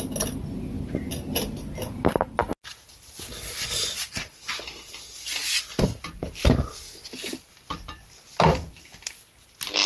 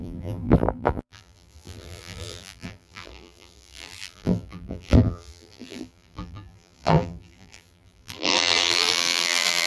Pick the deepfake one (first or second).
second